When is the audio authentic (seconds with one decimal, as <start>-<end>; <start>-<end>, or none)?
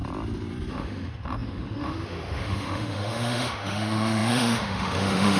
0.0-0.7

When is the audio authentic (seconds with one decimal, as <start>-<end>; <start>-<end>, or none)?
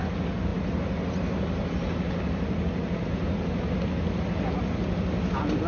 0.0-5.7